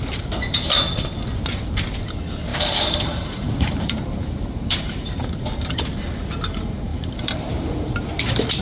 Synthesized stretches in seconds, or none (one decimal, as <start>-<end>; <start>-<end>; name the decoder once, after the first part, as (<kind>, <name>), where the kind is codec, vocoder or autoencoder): 2.5-5.4 (vocoder, BigVGAN v2); 6.9-7.7